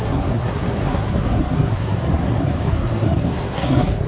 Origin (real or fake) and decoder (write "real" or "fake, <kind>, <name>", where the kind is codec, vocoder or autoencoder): fake, codec, SNAC